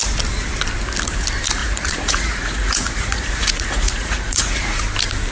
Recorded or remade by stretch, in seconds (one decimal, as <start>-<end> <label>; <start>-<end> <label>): 0.0-1.6 recorded; 1.6-4.8 remade; 4.8-5.3 recorded